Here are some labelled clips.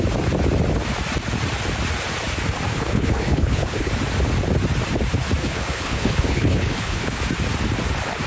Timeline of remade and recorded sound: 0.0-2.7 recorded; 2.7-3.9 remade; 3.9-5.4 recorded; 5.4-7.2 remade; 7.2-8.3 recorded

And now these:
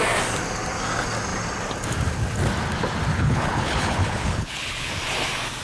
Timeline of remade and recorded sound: 0.0-3.1 recorded; 3.1-4.9 remade; 4.9-5.6 recorded

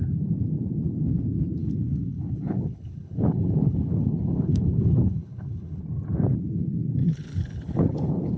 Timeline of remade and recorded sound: 0.0-1.6 recorded; 1.6-5.8 remade; 5.8-7.0 recorded; 7.0-8.4 remade